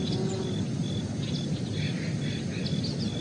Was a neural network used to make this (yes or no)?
no